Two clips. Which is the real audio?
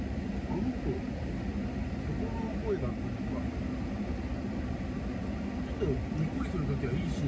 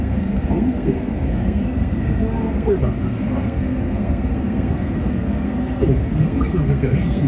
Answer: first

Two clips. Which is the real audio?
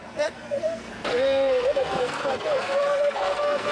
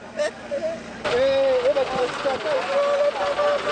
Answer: second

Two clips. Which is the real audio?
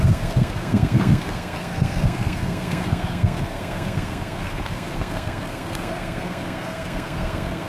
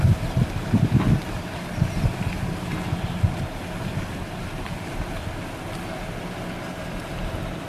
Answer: second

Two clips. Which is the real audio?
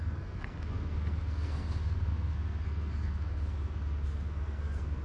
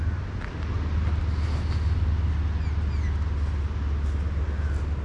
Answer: second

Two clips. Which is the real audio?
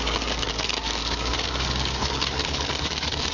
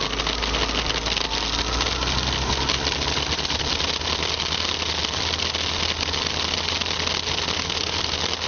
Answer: second